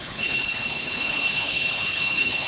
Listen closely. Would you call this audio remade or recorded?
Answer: remade